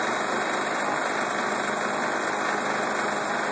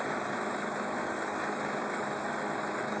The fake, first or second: second